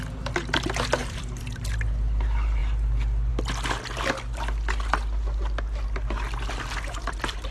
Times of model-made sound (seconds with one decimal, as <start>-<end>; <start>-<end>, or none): 1.0-1.7